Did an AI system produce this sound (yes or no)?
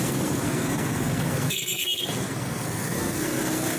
yes